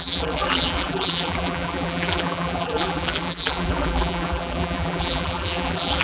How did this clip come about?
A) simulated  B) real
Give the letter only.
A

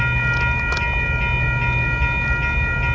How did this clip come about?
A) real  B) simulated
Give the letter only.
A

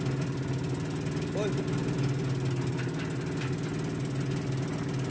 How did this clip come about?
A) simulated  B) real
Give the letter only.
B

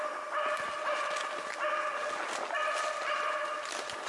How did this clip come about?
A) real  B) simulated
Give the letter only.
A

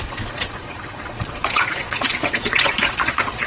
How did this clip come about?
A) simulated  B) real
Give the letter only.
A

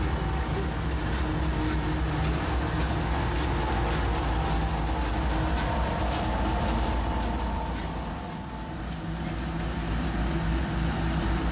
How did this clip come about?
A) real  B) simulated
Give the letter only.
A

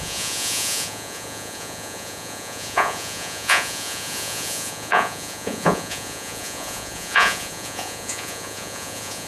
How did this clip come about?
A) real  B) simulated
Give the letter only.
B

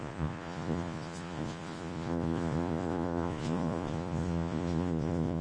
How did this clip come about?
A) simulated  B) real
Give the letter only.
A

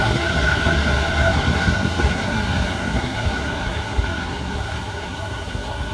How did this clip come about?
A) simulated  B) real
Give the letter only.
A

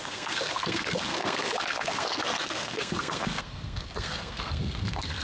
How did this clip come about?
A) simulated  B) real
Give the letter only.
A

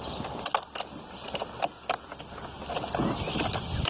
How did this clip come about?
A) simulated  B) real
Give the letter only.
B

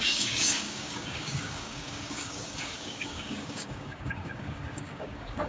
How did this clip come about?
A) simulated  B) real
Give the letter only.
A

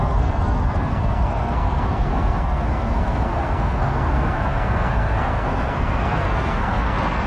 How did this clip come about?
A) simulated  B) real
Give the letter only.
A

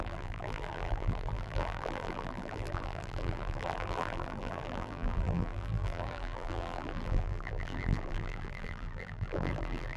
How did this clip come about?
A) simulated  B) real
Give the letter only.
A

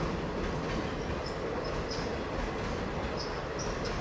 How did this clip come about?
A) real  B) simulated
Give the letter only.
A